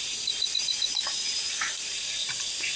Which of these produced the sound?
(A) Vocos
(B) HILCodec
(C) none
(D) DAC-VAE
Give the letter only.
C